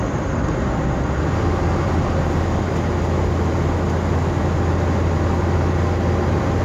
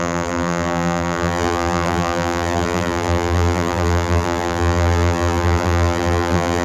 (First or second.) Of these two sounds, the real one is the first